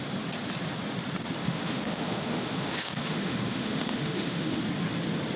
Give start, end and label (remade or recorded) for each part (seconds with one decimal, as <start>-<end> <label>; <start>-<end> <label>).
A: 0.0-1.4 recorded; 1.4-4.6 remade; 4.6-5.4 recorded